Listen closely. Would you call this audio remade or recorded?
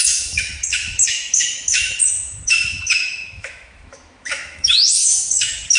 remade